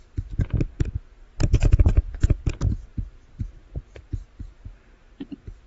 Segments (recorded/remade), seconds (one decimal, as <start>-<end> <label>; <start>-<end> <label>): 0.0-1.5 recorded; 1.5-2.4 remade; 2.4-5.7 recorded

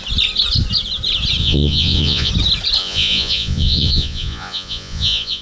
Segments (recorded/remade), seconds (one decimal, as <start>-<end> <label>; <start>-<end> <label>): 0.0-1.4 recorded; 1.4-2.3 remade; 2.3-2.8 recorded; 2.8-5.4 remade

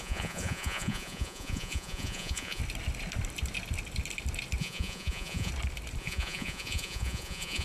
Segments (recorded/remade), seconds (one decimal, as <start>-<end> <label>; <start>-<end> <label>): 0.0-2.6 remade; 2.6-4.6 recorded; 4.6-5.5 remade; 5.5-6.0 recorded; 6.0-7.6 remade

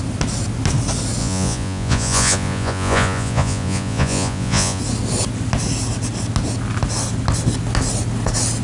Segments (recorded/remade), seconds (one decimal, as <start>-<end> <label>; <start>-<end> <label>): 0.0-1.2 recorded; 1.2-4.8 remade; 4.8-8.6 recorded

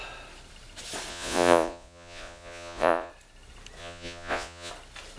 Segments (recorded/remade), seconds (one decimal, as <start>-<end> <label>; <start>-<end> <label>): 0.0-1.1 recorded; 1.1-3.1 remade; 3.1-3.8 recorded; 3.8-4.7 remade; 4.7-5.2 recorded